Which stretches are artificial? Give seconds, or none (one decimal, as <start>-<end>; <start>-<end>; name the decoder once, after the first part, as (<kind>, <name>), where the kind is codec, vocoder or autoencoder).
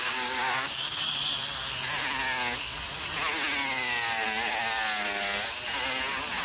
0.0-1.0 (codec, DAC)